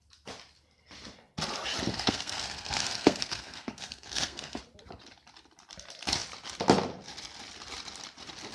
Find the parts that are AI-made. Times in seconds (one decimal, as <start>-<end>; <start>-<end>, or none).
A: 1.9-4.6